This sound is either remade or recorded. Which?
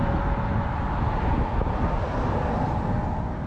recorded